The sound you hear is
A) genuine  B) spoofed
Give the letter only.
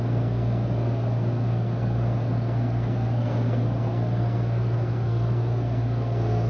B